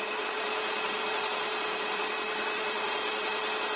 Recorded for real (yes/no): no